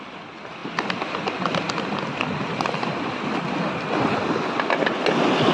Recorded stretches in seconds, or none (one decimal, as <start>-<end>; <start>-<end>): 0.0-5.5